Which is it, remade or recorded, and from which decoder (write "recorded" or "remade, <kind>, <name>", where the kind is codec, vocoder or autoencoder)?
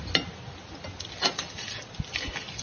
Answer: recorded